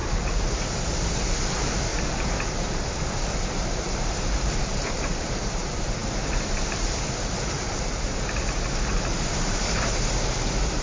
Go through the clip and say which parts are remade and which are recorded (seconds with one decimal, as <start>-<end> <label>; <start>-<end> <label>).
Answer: 0.0-1.9 remade; 1.9-3.1 recorded; 3.1-10.8 remade